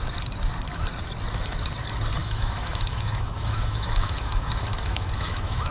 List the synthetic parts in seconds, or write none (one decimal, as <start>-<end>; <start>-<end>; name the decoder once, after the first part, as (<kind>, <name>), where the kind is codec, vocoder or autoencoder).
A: 2.2-5.7 (autoencoder, DAC-VAE)